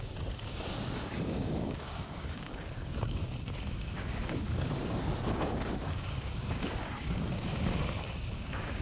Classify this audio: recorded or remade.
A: remade